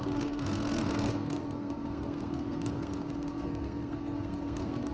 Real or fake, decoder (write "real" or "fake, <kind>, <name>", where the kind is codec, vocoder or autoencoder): fake, codec, SNAC